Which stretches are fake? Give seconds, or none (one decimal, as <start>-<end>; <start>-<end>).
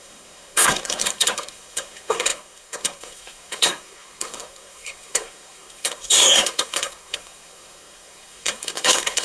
0.0-9.2